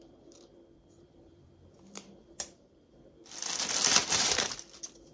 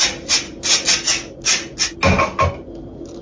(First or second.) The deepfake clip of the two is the first